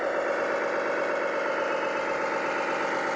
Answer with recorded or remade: recorded